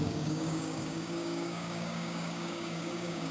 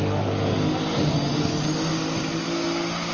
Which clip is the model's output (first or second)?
first